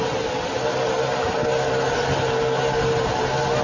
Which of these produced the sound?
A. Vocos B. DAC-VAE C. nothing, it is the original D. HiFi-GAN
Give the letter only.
C